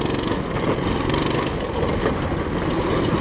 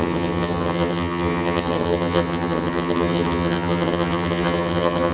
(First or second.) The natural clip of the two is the first